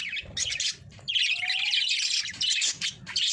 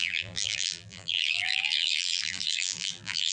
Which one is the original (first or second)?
first